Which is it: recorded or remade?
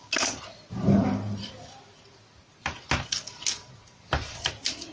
recorded